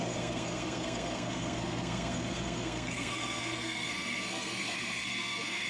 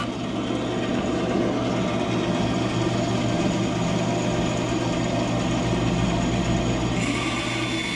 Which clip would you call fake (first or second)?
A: first